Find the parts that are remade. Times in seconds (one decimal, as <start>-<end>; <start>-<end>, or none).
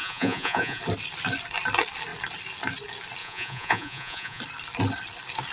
0.0-0.8; 3.2-4.4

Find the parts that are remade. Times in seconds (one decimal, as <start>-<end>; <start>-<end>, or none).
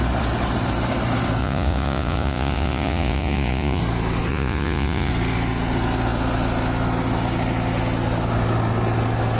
1.4-3.8; 4.3-5.1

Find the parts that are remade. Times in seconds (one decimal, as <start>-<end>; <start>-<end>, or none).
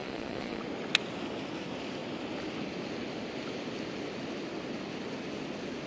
0.0-0.6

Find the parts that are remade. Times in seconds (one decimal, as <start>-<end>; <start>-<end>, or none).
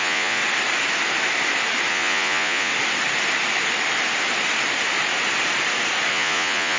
0.0-0.4; 1.9-2.7; 6.1-6.8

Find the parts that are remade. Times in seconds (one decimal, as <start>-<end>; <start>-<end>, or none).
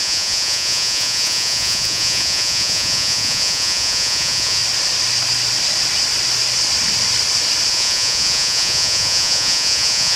0.0-4.6; 7.7-10.2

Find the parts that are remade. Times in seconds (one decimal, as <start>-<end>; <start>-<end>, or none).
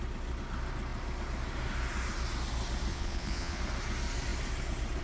2.9-3.6